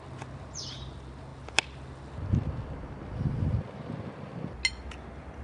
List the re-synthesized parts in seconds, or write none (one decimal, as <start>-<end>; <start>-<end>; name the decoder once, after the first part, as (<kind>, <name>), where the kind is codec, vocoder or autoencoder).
none